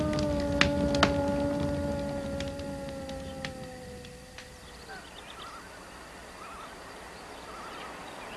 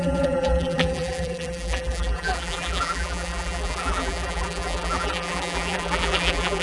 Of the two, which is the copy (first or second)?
second